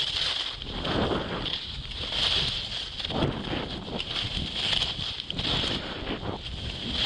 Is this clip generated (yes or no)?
no